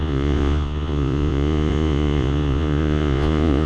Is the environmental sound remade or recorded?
remade